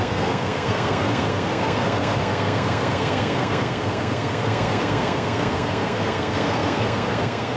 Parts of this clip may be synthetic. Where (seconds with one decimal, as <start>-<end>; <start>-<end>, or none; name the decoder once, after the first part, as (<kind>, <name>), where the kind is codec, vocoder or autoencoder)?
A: 0.0-7.6 (codec, SNAC)